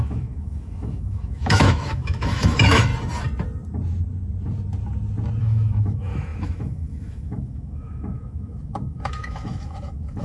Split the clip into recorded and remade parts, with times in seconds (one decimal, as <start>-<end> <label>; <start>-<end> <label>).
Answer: 0.0-2.9 remade; 2.9-5.4 recorded; 5.4-10.2 remade